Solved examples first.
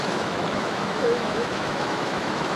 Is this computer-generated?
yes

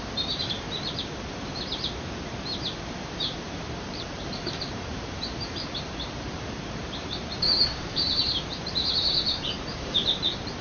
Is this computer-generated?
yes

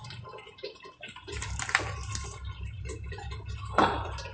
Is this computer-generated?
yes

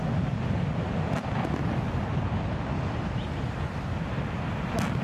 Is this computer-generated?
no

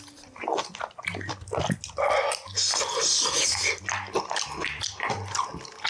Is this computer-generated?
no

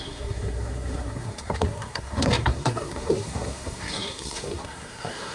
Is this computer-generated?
yes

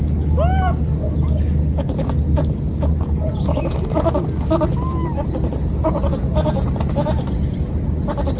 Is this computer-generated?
no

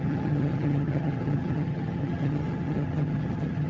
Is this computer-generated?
yes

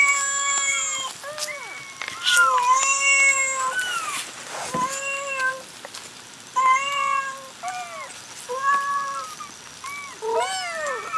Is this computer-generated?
no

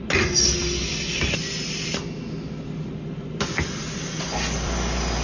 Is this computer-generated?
no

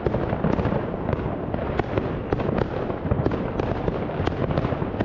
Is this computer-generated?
no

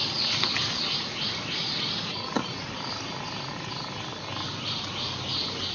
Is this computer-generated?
no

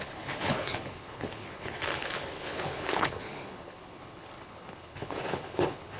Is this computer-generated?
yes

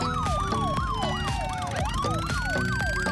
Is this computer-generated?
no